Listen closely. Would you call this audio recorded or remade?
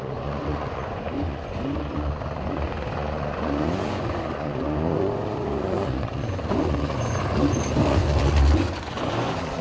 remade